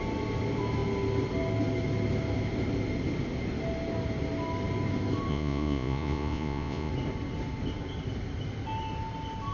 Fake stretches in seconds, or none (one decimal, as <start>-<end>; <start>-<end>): 5.3-6.9